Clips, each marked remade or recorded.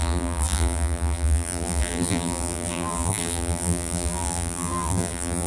remade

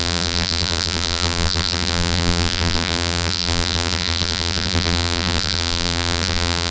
remade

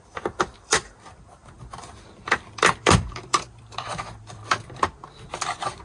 remade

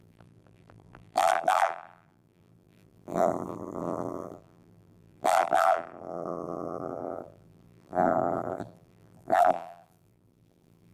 remade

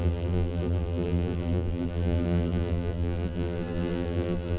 remade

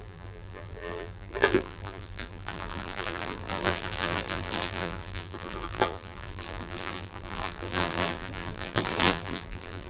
remade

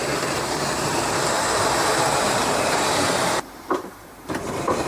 remade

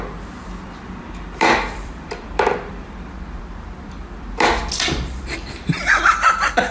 remade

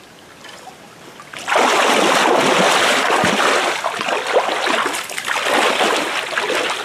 recorded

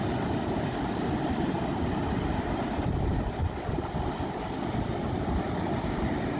remade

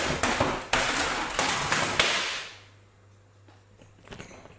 recorded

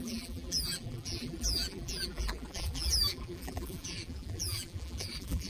remade